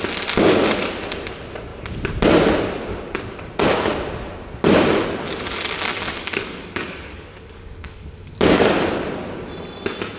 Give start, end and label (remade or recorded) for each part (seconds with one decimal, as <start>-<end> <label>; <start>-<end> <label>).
0.0-5.9 recorded; 5.9-8.6 remade; 8.6-10.2 recorded